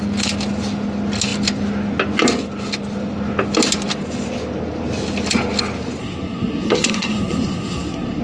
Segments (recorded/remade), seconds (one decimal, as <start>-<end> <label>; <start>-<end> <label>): 0.0-6.0 recorded; 6.0-8.2 remade